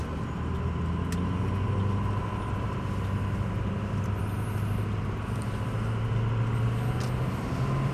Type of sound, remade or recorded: recorded